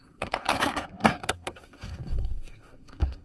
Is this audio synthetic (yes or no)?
yes